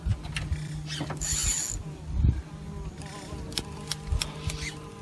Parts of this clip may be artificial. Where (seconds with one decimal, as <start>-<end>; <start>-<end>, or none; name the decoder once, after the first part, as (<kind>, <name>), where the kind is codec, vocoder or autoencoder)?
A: none